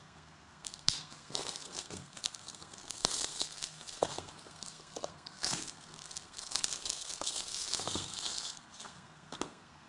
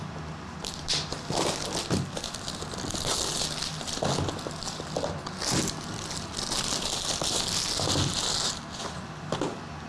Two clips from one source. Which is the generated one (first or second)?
first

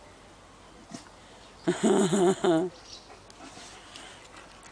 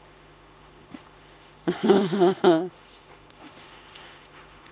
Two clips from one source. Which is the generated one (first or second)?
second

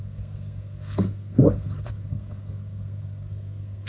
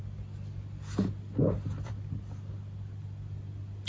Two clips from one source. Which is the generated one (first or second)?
first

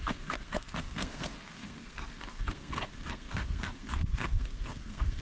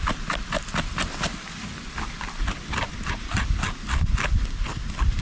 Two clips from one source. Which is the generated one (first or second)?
first